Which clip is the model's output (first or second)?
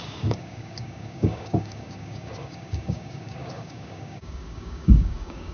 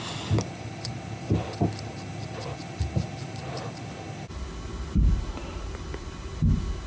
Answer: first